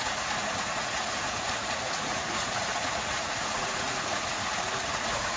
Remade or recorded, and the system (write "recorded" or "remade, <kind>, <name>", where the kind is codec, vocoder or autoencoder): remade, vocoder, Vocos